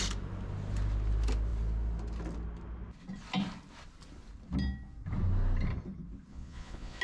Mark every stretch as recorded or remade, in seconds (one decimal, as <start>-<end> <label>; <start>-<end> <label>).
0.0-6.3 recorded; 6.3-7.0 remade